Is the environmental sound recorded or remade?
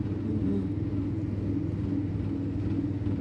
recorded